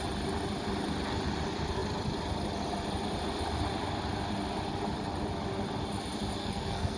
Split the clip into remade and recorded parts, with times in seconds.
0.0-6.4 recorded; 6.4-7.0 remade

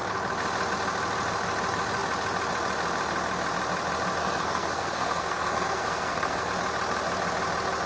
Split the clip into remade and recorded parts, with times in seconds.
0.0-4.2 recorded; 4.2-6.5 remade; 6.5-7.9 recorded

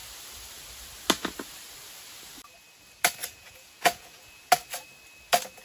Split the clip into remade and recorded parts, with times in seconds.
0.0-3.2 recorded; 3.2-4.5 remade; 4.5-5.6 recorded

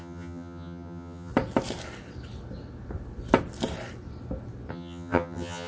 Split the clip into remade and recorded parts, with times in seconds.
0.0-1.3 remade; 1.3-4.7 recorded; 4.7-5.7 remade